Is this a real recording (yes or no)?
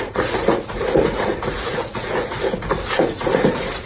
no